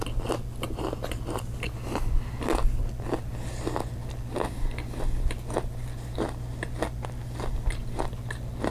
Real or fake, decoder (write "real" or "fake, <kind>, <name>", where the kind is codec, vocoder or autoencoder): real